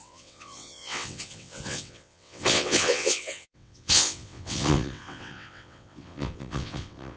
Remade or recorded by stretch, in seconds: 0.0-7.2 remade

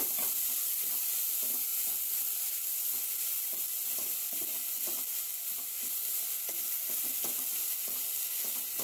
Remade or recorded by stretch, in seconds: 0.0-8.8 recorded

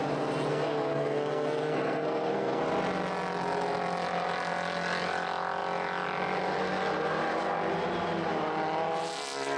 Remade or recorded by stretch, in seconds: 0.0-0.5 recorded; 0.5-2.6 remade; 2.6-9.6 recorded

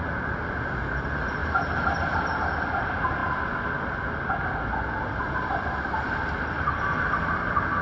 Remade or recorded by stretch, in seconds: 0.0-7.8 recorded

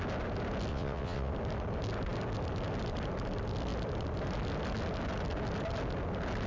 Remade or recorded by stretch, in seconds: 0.0-0.7 recorded; 0.7-1.3 remade; 1.3-6.5 recorded